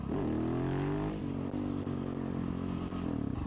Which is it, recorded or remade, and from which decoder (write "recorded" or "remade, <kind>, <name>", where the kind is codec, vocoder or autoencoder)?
recorded